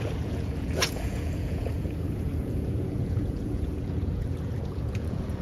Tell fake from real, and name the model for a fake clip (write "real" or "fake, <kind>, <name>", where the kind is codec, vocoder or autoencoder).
fake, vocoder, Vocos